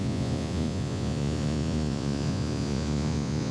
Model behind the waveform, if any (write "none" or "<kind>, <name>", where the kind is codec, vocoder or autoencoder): vocoder, Vocos